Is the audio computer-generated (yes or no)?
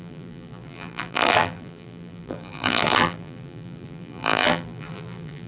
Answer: yes